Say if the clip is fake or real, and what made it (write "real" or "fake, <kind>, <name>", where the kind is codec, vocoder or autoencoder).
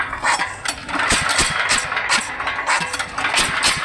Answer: real